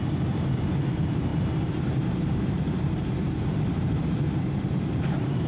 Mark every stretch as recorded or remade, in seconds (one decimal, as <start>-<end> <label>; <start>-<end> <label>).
0.0-5.5 remade